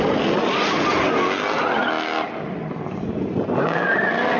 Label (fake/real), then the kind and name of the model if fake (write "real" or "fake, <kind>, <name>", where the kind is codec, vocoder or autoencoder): real